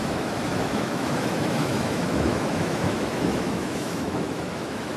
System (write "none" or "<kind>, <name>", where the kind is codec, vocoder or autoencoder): autoencoder, DAC-VAE